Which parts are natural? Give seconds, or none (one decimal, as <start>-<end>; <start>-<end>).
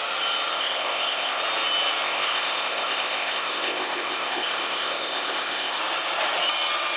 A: 0.0-0.5; 1.4-2.0; 5.8-7.0